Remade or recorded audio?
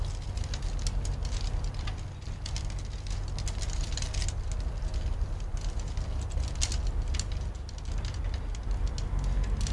recorded